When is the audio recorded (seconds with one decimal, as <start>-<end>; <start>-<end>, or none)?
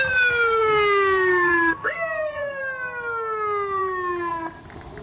0.0-0.6; 2.6-5.0